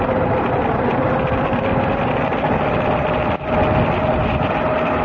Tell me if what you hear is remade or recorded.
remade